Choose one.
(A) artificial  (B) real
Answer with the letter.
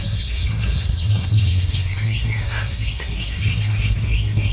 A